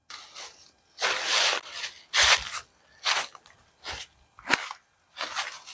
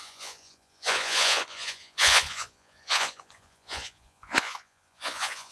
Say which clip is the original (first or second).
first